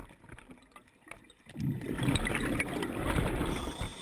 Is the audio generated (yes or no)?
yes